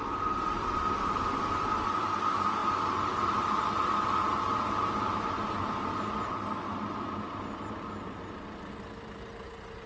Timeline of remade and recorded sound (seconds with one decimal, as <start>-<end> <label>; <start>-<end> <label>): 0.0-9.9 recorded